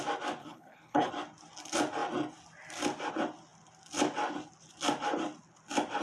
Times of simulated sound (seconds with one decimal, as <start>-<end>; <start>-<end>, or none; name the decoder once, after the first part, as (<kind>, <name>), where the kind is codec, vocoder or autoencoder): 0.4-1.1 (codec, HILCodec)